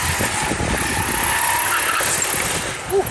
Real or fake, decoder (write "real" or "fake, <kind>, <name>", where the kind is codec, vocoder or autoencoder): real